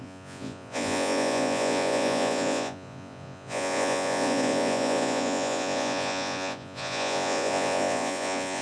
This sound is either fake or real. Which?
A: fake